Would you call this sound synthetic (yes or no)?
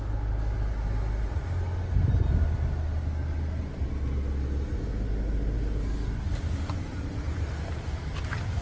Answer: no